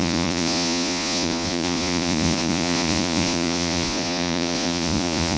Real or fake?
fake